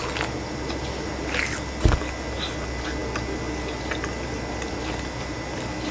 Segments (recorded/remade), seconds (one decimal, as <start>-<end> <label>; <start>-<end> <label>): 0.0-5.9 recorded